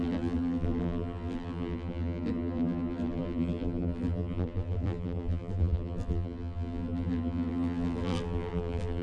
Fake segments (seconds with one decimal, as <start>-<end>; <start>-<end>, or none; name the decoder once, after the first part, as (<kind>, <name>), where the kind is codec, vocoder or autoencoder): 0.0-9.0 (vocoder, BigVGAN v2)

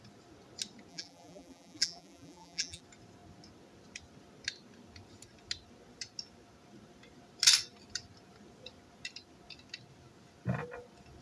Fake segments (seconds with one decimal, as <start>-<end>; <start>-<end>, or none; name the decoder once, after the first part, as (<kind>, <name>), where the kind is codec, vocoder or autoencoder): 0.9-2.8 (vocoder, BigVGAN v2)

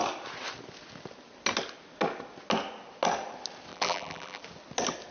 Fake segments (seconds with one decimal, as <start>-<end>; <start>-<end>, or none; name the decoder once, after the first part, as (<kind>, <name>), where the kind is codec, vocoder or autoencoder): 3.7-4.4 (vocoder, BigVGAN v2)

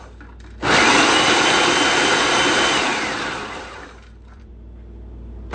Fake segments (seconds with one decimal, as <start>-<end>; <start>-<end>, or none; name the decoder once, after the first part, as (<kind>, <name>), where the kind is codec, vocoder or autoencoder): 2.9-4.5 (vocoder, BigVGAN v2)

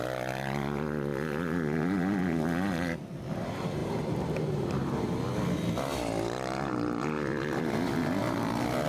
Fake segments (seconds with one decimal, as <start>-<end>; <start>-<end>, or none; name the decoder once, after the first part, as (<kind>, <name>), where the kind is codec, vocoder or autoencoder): 3.8-5.2 (vocoder, BigVGAN v2)